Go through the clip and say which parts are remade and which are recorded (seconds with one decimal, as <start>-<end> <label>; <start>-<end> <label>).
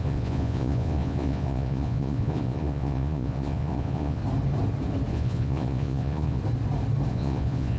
0.0-4.2 remade; 4.2-5.1 recorded; 5.1-6.4 remade; 6.4-7.1 recorded; 7.1-7.8 remade